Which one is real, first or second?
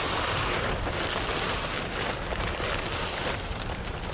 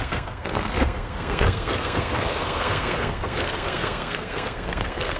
first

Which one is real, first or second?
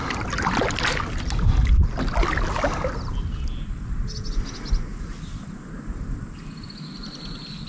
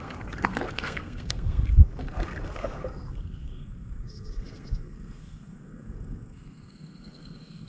first